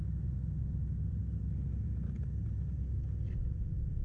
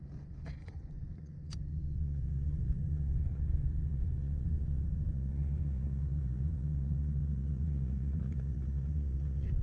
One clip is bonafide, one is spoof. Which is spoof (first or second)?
second